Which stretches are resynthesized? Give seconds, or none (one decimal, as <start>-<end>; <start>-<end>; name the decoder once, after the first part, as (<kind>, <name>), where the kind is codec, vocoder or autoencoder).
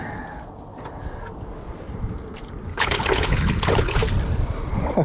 2.7-4.0 (codec, HILCodec)